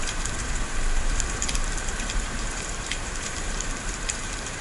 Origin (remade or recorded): remade